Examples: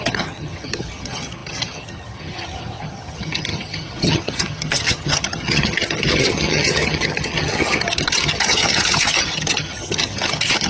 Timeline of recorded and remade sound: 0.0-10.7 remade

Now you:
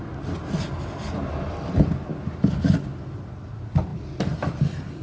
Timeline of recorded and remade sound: 0.0-5.0 recorded